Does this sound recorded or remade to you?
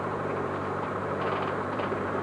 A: remade